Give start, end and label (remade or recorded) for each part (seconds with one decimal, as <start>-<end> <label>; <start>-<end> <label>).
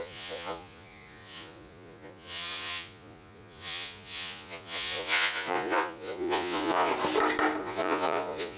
0.0-6.9 remade; 6.9-7.6 recorded; 7.6-8.6 remade